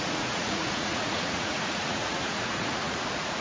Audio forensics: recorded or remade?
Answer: remade